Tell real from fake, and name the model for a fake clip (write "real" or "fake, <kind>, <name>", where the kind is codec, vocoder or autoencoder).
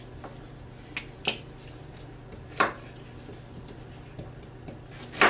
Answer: real